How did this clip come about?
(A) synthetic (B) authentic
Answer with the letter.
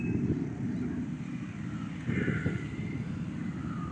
B